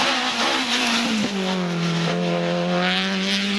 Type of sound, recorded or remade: recorded